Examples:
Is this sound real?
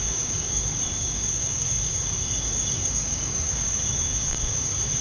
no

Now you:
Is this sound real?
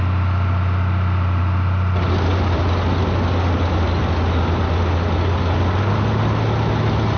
yes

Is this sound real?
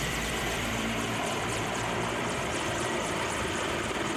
no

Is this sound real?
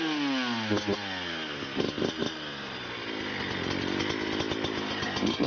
yes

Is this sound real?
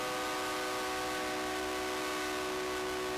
yes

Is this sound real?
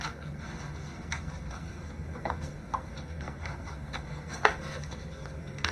no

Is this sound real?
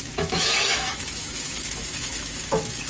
no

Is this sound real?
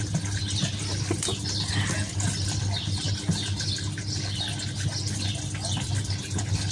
yes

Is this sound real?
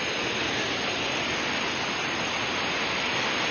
yes